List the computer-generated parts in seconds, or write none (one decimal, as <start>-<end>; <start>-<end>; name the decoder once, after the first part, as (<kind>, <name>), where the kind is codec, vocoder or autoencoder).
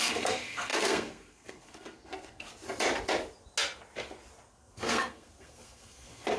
0.0-2.5 (codec, SNAC); 4.5-6.4